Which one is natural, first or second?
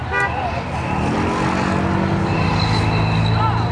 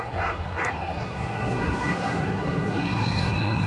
first